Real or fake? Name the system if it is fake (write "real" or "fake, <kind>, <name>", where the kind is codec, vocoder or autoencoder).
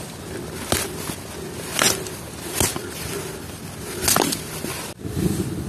real